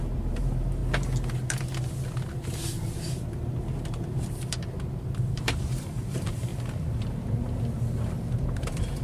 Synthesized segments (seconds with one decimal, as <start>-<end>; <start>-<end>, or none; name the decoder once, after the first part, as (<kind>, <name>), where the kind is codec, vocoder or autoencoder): 0.0-0.8 (vocoder, BigVGAN v2); 5.2-6.5; 8.6-9.0